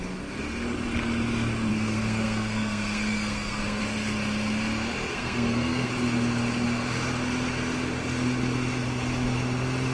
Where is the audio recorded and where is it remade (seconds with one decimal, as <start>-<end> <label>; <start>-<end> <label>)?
0.0-1.7 recorded; 1.7-3.8 remade; 3.8-5.1 recorded; 5.1-5.9 remade; 5.9-9.9 recorded